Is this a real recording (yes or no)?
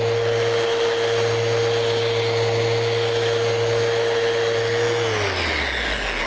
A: yes